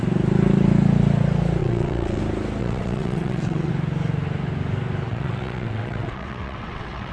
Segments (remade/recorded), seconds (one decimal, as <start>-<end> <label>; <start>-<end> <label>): 0.0-1.6 recorded; 1.6-2.2 remade; 2.2-2.6 recorded; 2.6-3.7 remade; 3.7-5.1 recorded; 5.1-7.1 remade